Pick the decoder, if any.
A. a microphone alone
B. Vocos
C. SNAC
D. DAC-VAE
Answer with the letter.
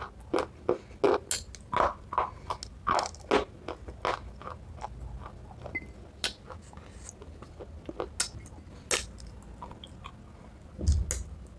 A